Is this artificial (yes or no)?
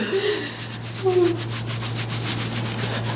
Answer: no